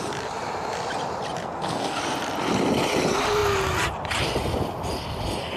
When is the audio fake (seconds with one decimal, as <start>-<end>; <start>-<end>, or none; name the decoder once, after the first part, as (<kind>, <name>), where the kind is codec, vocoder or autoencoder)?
1.4-2.0 (codec, SNAC)